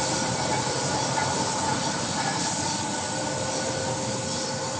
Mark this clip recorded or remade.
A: recorded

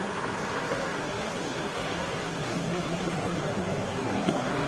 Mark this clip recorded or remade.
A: remade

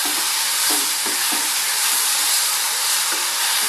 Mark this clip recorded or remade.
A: remade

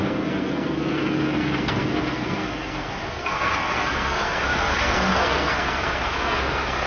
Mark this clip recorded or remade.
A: remade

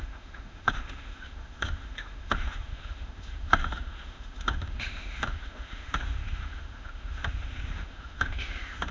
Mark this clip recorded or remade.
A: remade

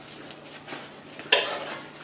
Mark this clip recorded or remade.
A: recorded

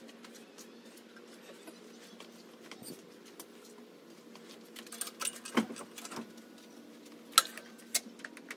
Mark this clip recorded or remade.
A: recorded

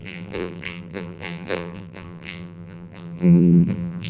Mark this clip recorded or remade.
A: remade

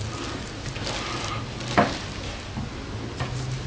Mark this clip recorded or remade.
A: recorded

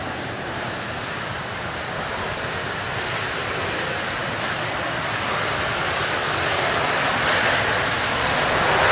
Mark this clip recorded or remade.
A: recorded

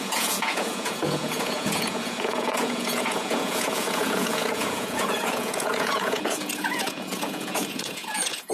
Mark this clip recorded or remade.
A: remade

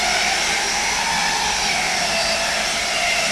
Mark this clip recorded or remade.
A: recorded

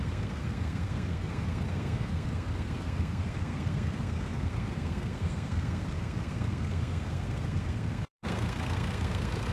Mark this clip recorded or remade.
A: remade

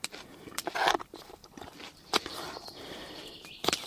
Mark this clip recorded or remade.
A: recorded